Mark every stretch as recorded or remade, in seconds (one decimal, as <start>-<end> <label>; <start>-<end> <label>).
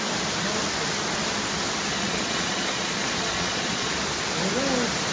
0.0-1.9 recorded; 1.9-3.9 remade; 3.9-5.1 recorded